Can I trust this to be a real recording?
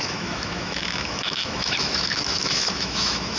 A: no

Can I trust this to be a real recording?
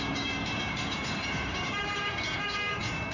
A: no